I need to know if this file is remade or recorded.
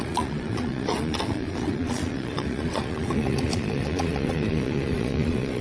remade